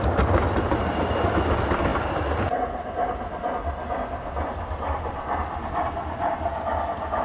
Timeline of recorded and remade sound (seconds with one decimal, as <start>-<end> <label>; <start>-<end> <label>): 0.0-7.2 recorded

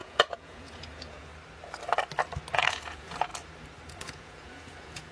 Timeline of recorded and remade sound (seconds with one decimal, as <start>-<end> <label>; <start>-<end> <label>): 0.0-1.3 remade; 1.3-2.5 recorded; 2.5-3.3 remade; 3.3-3.9 recorded; 3.9-5.1 remade

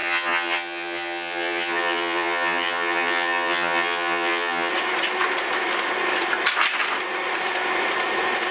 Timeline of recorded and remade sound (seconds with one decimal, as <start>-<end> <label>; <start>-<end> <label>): 0.0-4.7 remade; 4.7-8.5 recorded

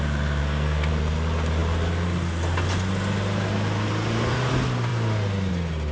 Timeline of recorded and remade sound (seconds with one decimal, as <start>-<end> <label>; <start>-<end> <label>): 0.0-0.4 recorded; 0.4-0.9 remade; 0.9-5.9 recorded